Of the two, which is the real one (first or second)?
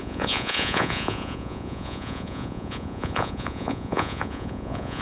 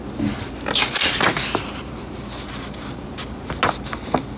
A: second